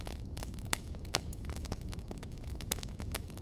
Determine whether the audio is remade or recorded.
remade